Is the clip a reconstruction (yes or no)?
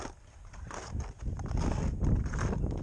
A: no